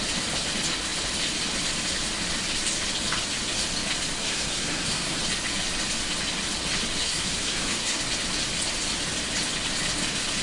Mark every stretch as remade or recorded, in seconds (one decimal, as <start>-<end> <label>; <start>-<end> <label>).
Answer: 0.0-4.2 recorded; 4.2-5.2 remade; 5.2-7.0 recorded; 7.0-8.0 remade; 8.0-10.4 recorded